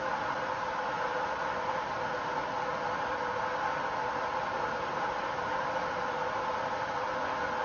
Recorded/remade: recorded